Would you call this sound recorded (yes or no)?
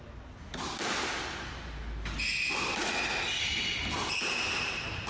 yes